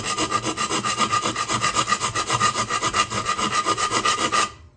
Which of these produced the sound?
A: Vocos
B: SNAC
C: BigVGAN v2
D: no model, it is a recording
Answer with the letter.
D